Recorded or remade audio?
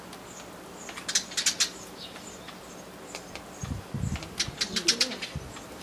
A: recorded